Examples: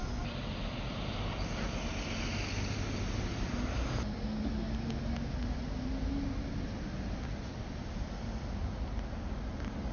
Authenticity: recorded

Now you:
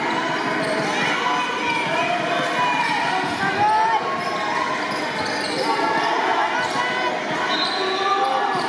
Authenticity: recorded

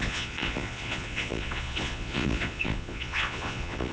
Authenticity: remade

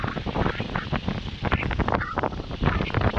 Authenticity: recorded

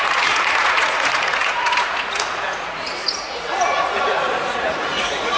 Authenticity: remade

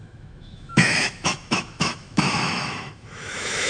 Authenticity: remade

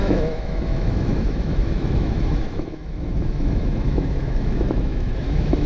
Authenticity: remade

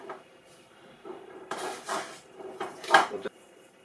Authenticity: remade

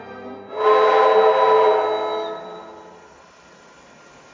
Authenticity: recorded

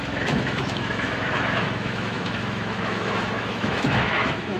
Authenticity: remade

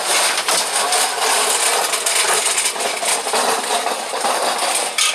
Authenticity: recorded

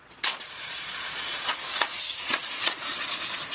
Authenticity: remade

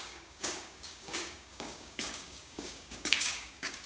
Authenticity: remade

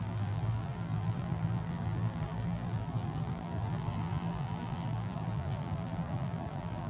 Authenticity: remade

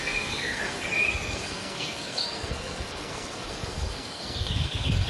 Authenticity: remade